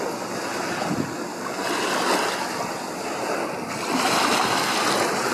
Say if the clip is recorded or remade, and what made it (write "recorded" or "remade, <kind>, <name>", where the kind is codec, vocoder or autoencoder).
recorded